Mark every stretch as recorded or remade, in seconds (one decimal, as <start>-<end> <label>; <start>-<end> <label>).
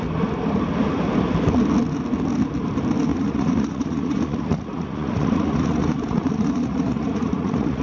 0.0-3.1 recorded; 3.1-7.8 remade